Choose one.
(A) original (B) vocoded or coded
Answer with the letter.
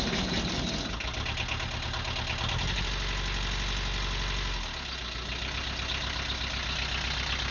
A